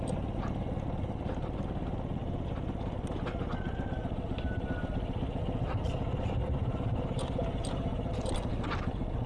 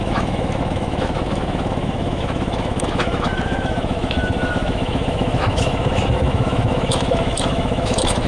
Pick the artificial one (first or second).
second